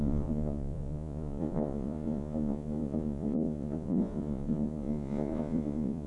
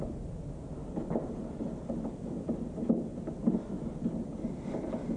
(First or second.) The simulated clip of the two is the first